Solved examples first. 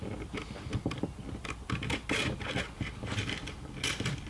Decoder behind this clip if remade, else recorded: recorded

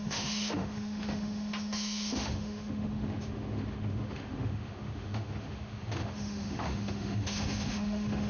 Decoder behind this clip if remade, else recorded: remade, autoencoder, DAC-VAE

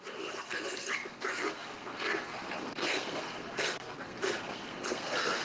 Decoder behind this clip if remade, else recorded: remade, codec, SNAC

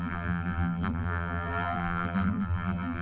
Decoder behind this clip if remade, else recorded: remade, vocoder, BigVGAN v2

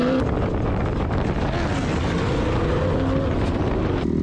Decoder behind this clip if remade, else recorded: recorded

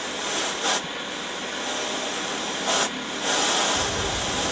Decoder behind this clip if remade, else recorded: recorded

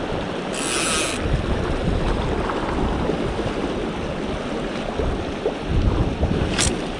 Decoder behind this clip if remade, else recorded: recorded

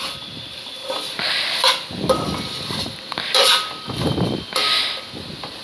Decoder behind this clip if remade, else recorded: remade, vocoder, BigVGAN v2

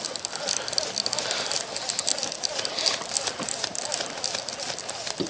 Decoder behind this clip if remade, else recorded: recorded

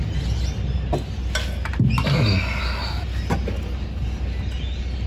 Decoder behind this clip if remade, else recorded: recorded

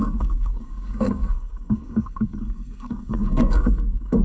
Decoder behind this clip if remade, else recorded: remade, codec, SNAC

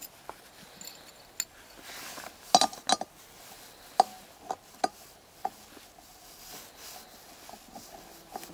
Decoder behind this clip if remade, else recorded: recorded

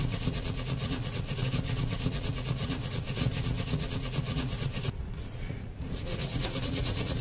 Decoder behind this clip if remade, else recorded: remade, vocoder, Vocos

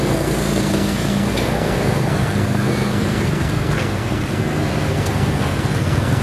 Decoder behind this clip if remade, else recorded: remade, codec, SNAC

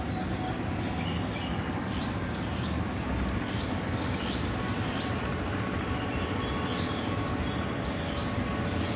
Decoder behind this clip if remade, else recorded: recorded